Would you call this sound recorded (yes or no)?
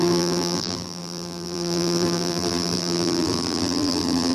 no